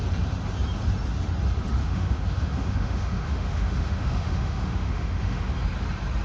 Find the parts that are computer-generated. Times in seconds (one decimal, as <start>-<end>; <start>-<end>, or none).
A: 1.8-5.5